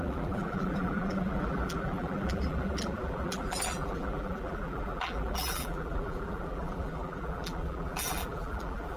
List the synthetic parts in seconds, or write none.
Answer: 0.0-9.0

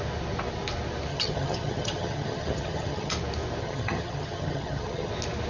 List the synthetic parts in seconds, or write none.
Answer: 1.1-3.1; 3.6-5.1

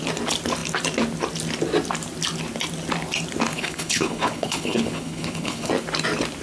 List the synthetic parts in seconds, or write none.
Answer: 3.5-5.7